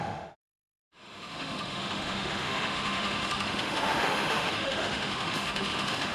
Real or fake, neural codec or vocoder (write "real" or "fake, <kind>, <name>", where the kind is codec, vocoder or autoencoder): fake, autoencoder, DAC-VAE